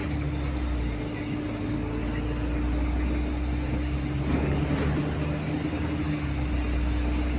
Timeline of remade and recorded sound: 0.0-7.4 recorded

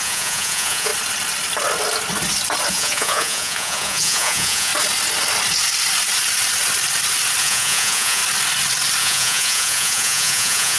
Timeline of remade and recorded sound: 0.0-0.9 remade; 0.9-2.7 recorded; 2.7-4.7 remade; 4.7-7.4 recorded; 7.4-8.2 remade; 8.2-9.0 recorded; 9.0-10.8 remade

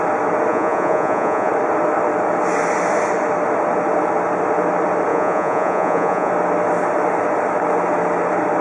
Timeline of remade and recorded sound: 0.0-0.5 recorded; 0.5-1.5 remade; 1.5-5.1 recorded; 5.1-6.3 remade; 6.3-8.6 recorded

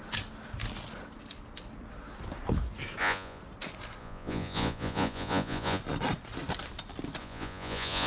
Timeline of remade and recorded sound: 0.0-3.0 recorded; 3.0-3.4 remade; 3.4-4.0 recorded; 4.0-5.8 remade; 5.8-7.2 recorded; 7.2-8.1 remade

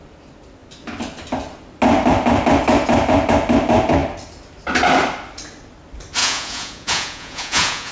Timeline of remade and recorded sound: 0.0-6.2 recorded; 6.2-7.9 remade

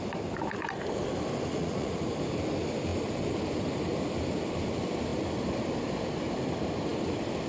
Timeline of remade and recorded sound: 0.0-1.5 recorded; 1.5-2.0 remade; 2.0-7.5 recorded

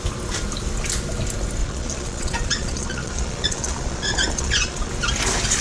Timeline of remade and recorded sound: 0.0-1.6 recorded; 1.6-4.9 remade; 4.9-5.6 recorded